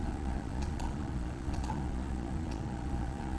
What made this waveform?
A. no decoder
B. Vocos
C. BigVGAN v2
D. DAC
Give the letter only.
B